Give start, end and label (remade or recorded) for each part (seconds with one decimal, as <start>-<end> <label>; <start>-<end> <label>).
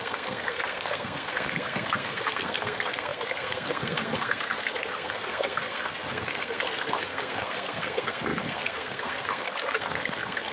0.0-10.5 remade